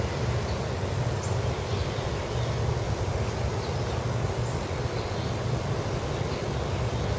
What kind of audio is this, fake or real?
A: real